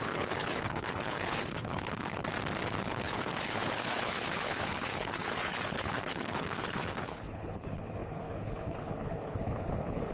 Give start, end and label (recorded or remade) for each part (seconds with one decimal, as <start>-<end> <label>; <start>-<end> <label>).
0.0-2.2 remade; 2.2-2.8 recorded; 2.8-10.1 remade